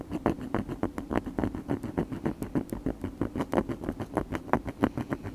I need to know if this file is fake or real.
real